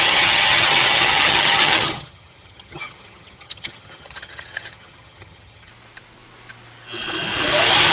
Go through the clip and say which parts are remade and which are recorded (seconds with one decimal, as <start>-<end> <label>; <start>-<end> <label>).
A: 0.0-5.7 remade; 5.7-7.9 recorded